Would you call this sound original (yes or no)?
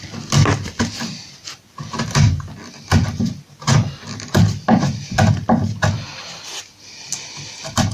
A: yes